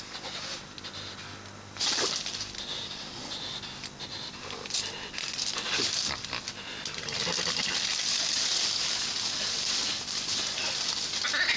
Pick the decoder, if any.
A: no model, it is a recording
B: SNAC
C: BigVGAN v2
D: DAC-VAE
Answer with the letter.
A